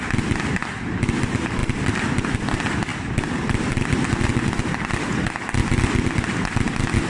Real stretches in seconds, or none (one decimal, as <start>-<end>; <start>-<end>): 0.0-0.6; 1.1-1.6; 2.5-2.9; 4.5-7.1